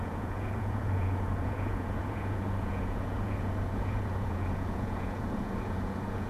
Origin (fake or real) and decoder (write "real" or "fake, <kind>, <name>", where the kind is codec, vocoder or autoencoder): fake, vocoder, Vocos